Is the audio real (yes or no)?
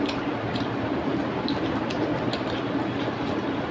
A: yes